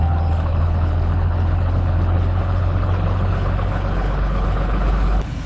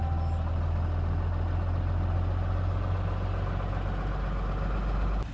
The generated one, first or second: first